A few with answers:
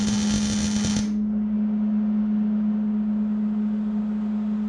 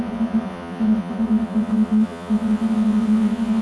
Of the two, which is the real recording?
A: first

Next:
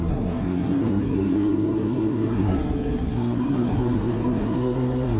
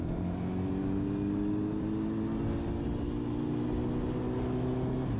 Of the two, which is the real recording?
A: second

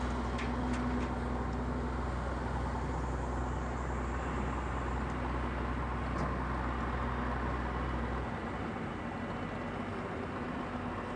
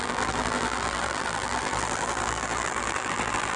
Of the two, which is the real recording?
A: first